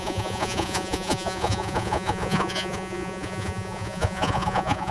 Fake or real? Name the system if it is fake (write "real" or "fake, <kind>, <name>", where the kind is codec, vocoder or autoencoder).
fake, vocoder, Vocos